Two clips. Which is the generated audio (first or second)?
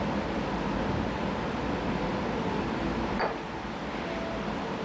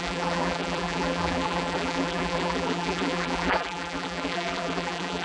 second